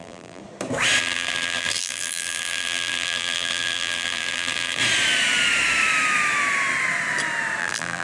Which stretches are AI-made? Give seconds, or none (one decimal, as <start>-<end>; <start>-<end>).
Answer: 0.0-0.4; 1.0-4.8; 7.6-8.0